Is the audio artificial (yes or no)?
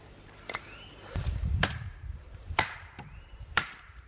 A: yes